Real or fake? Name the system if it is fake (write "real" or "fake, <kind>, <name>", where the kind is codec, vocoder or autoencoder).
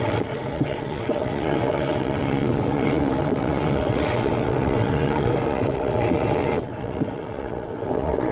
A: fake, vocoder, WaveNeXt